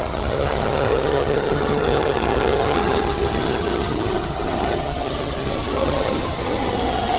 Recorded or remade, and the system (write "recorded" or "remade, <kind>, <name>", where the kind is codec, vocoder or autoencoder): remade, vocoder, HiFi-GAN